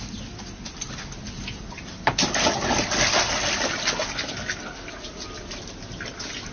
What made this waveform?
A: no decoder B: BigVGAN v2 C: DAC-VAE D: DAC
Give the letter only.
A